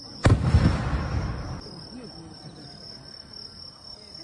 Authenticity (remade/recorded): recorded